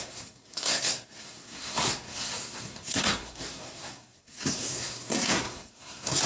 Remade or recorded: remade